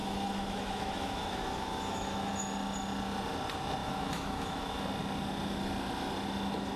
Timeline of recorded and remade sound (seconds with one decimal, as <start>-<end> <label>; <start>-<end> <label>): 0.0-2.3 remade; 2.3-3.8 recorded; 3.8-4.8 remade; 4.8-6.8 recorded